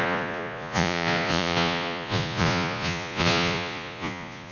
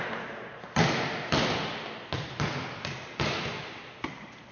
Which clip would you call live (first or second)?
second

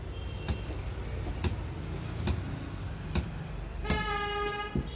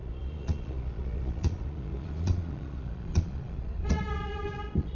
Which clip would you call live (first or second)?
first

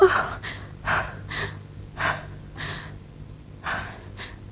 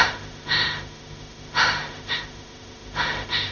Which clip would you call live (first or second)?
first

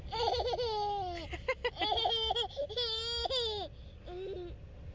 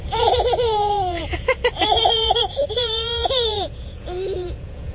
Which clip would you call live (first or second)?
first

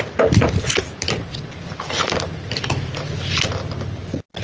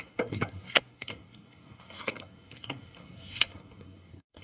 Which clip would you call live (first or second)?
first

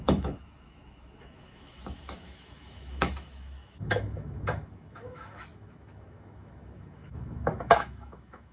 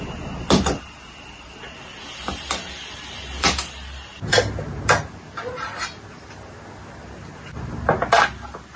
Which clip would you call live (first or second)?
second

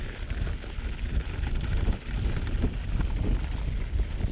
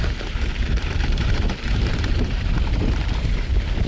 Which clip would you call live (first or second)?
first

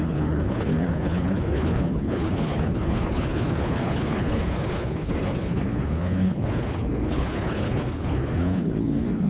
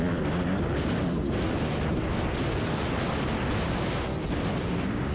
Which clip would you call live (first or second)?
second